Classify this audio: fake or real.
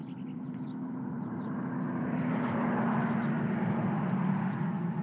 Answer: real